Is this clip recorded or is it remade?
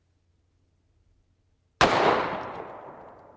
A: recorded